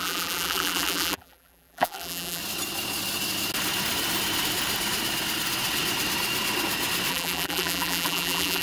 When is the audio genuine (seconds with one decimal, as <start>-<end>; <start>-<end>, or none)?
2.4-7.1